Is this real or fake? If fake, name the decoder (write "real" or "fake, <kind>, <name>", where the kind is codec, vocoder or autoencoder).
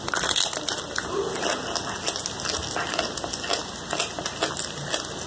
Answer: real